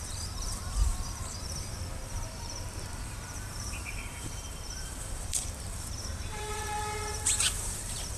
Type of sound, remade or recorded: remade